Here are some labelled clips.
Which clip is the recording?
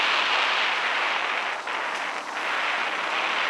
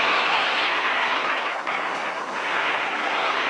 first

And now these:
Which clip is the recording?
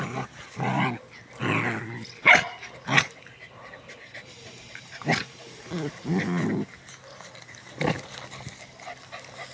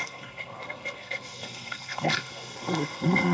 first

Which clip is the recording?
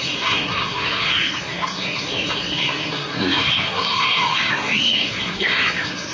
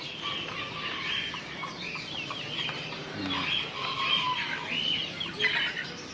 second